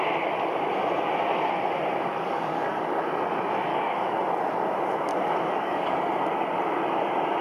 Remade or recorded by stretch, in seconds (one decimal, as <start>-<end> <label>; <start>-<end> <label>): 0.0-2.1 recorded; 2.1-3.0 remade; 3.0-3.7 recorded; 3.7-4.2 remade; 4.2-5.1 recorded; 5.1-6.0 remade; 6.0-7.4 recorded